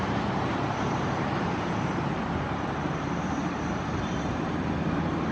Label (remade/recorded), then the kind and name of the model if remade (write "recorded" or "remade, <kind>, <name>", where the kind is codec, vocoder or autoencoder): remade, vocoder, BigVGAN v2